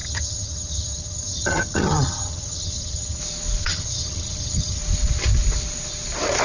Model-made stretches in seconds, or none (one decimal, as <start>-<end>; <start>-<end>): 0.0-3.2; 3.6-4.8